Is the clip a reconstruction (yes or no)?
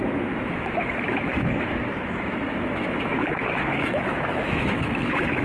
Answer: yes